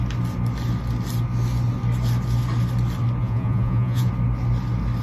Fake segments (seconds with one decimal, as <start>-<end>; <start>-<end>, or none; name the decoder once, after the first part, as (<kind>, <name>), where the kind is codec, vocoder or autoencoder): 3.2-4.1 (vocoder, Vocos)